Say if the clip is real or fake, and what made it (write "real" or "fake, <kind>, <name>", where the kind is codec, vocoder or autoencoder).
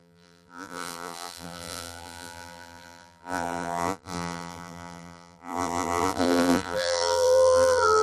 fake, vocoder, BigVGAN v2